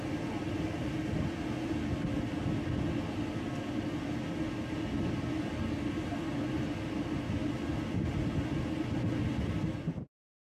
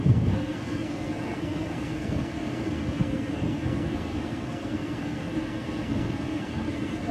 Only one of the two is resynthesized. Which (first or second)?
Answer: second